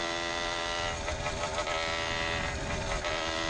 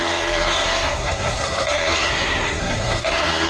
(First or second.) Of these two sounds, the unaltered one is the first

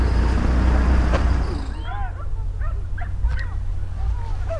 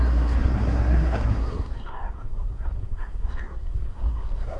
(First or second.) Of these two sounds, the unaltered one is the first